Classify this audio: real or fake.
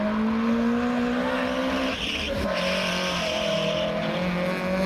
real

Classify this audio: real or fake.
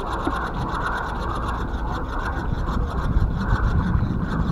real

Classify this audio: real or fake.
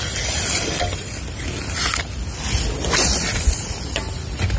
fake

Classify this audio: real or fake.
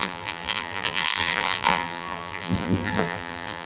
fake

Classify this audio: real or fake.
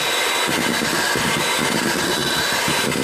real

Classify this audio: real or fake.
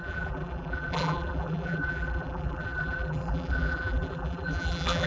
fake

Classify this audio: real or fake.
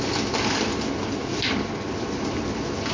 real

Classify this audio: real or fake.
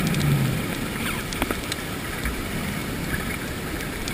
real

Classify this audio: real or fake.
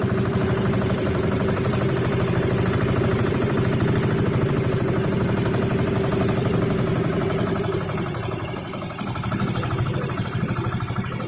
fake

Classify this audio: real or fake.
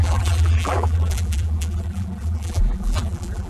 fake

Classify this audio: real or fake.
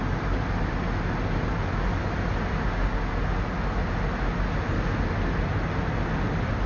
real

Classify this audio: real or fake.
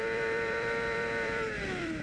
fake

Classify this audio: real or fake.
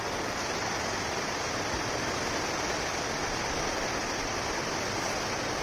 real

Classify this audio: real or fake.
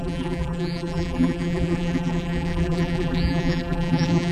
fake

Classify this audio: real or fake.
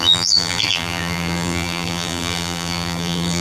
fake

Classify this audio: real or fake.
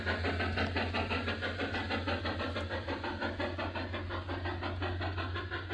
real